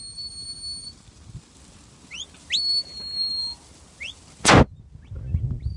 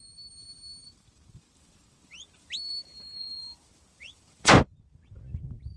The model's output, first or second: second